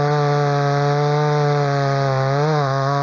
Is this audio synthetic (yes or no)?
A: no